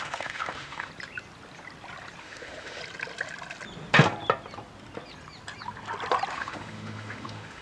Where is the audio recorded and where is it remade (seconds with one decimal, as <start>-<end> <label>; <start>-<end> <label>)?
0.0-0.9 remade; 0.9-2.2 recorded; 2.2-2.8 remade; 2.8-6.3 recorded; 6.3-7.6 remade